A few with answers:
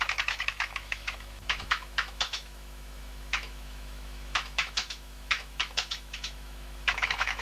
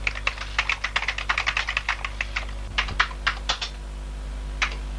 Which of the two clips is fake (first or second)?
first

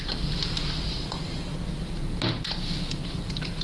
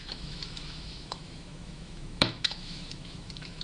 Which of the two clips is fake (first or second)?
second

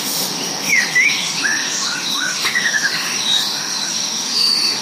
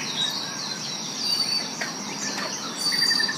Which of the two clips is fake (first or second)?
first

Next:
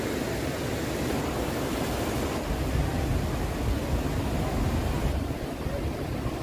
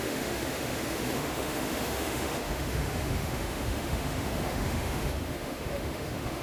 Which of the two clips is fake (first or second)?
second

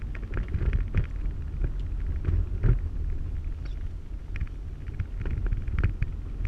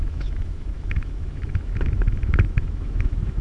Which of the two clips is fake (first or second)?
second